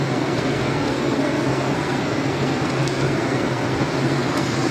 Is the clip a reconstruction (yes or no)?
yes